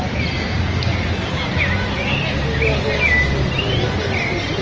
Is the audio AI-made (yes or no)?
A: no